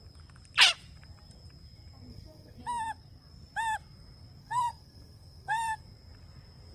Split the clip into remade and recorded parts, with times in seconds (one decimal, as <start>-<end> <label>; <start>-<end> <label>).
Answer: 0.0-2.1 recorded; 2.1-2.6 remade; 2.6-4.4 recorded; 4.4-5.8 remade; 5.8-6.7 recorded